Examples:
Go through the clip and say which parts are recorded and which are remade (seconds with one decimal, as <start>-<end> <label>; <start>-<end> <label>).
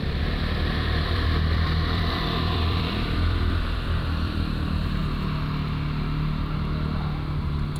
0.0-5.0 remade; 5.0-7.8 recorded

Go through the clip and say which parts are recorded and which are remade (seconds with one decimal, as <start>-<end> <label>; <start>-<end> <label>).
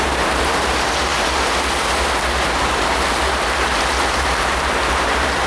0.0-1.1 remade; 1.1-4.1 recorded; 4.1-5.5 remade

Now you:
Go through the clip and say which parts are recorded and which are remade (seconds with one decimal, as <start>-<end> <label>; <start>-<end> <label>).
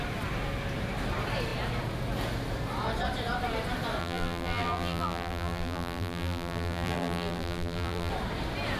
0.0-4.0 recorded; 4.0-8.1 remade; 8.1-8.8 recorded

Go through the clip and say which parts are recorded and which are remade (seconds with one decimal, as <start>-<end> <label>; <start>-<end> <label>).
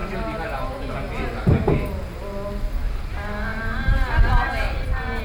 0.0-5.2 recorded